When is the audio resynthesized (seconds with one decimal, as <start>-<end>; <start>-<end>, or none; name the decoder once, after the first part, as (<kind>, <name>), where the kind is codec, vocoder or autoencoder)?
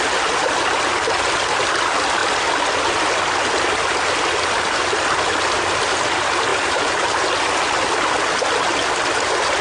6.5-7.2 (vocoder, BigVGAN v2)